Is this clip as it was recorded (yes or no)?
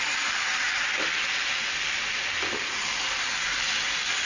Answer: yes